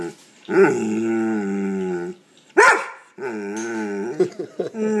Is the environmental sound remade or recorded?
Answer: recorded